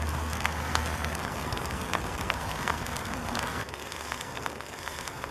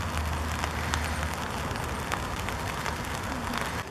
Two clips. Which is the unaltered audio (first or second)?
second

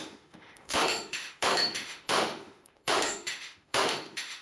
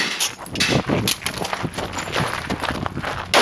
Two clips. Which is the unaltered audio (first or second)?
second